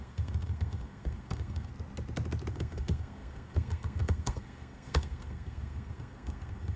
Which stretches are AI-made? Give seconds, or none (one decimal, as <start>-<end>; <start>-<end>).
0.0-1.7; 2.5-6.8